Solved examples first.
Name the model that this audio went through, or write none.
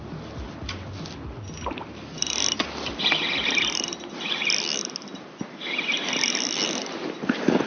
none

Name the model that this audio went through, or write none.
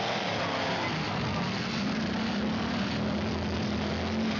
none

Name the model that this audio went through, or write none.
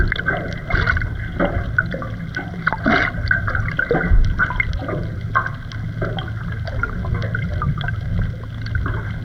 none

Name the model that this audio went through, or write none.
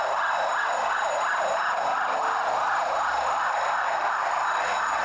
none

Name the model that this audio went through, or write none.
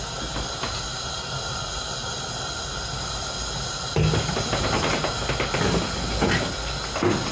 none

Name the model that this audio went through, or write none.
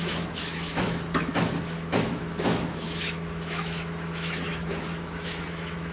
autoencoder, DAC-VAE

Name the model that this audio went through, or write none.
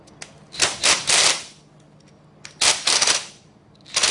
none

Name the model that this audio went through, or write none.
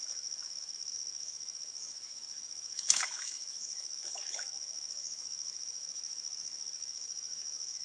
autoencoder, DAC-VAE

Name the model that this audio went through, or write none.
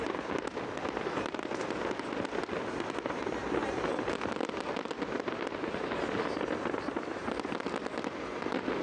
none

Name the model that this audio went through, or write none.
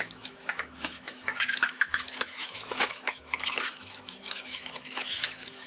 autoencoder, DAC-VAE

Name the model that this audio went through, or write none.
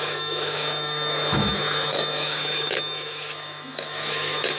autoencoder, DAC-VAE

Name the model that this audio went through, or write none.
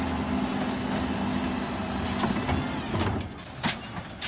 none